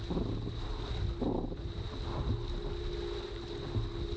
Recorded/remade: recorded